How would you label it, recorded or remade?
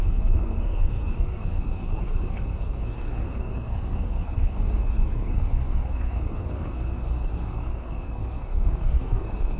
remade